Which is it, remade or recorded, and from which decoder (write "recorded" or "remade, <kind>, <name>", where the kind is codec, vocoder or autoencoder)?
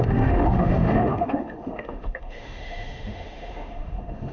remade, autoencoder, DAC-VAE